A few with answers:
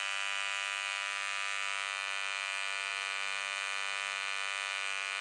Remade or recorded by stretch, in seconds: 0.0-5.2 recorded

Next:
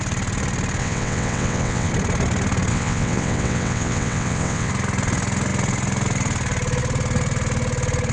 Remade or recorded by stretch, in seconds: 0.0-0.8 recorded; 0.8-1.9 remade; 1.9-2.7 recorded; 2.7-4.7 remade; 4.7-8.1 recorded

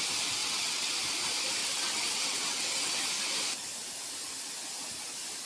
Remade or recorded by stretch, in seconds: 0.0-0.4 recorded; 0.4-0.9 remade; 0.9-1.6 recorded; 1.6-3.1 remade; 3.1-5.5 recorded